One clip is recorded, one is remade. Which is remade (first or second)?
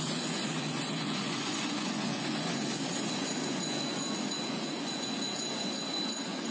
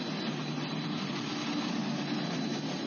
first